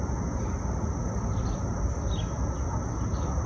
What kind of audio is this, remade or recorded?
recorded